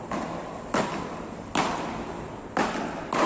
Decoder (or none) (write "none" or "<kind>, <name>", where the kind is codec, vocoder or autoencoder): none